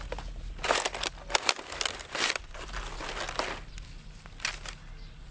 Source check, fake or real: real